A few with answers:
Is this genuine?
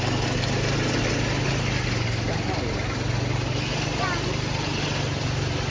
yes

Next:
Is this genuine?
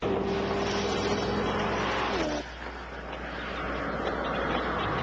yes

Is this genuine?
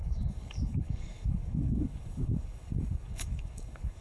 no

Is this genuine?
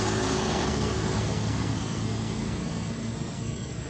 no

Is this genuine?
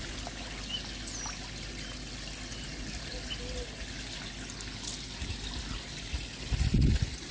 yes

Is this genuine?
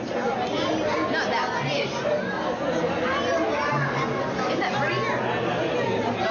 yes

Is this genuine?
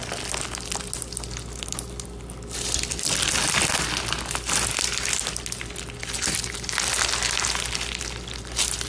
yes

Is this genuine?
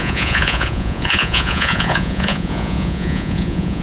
no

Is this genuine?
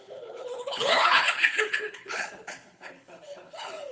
no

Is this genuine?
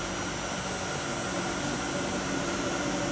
yes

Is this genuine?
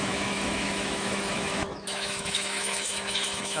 no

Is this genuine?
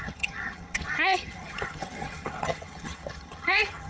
no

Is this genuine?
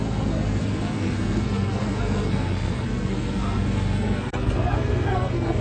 no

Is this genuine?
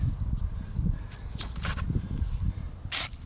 yes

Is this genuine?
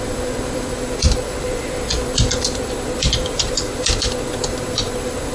no